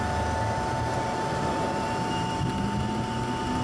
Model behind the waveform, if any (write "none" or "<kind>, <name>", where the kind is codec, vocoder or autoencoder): none